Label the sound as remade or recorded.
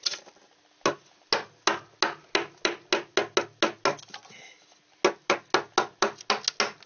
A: recorded